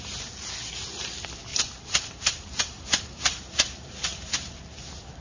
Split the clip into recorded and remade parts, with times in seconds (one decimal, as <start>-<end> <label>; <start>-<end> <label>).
0.0-1.5 recorded; 1.5-4.6 remade; 4.6-5.2 recorded